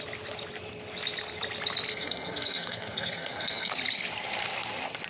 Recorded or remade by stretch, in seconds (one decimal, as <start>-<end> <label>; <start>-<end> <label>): 0.0-1.9 recorded; 1.9-3.7 remade; 3.7-5.1 recorded